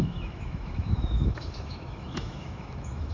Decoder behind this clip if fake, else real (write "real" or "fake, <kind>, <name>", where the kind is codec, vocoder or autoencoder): fake, autoencoder, DAC-VAE